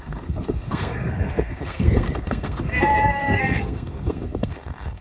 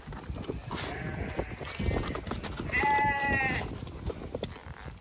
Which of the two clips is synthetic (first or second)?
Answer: first